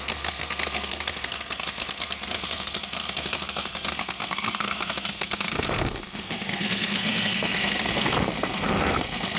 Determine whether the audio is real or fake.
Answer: fake